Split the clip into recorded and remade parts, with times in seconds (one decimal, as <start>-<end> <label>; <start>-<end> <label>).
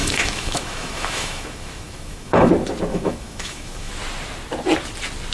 0.0-2.5 remade; 2.5-2.9 recorded; 2.9-3.9 remade; 3.9-5.3 recorded